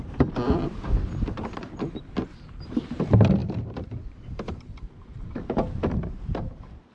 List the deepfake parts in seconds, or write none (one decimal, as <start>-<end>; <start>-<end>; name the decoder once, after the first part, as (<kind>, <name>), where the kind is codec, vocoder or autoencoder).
0.0-6.9 (vocoder, BigVGAN v2)

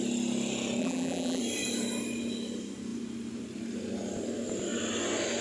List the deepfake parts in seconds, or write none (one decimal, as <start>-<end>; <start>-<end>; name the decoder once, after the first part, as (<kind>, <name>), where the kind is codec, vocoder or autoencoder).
0.8-1.4 (vocoder, BigVGAN v2)